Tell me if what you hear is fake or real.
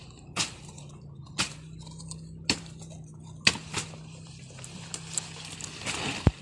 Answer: real